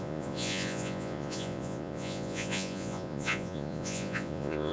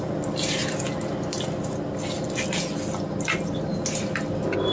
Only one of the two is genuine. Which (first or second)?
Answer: second